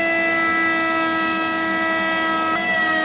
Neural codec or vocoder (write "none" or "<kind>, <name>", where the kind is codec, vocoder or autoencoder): none